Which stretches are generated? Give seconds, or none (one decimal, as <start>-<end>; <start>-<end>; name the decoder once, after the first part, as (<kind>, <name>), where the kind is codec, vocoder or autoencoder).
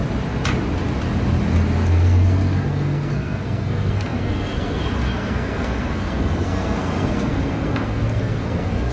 1.9-8.9 (codec, SNAC)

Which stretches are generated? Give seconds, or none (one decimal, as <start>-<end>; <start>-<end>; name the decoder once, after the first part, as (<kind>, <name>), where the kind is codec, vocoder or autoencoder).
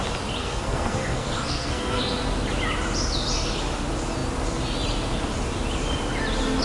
0.4-2.0 (codec, SNAC)